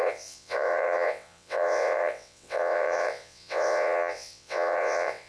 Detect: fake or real fake